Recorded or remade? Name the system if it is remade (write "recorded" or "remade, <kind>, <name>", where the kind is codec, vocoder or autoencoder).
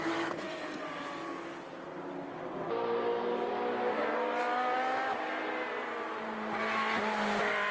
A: recorded